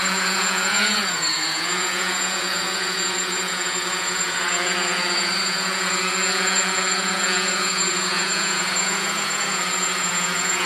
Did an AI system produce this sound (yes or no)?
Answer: yes